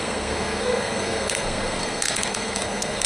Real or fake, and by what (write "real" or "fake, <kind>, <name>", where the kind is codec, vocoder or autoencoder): fake, codec, SNAC